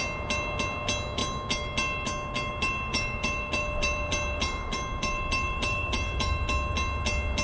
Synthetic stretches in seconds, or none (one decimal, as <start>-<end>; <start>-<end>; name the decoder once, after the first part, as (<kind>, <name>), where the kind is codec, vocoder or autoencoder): 2.9-6.3 (vocoder, BigVGAN v2)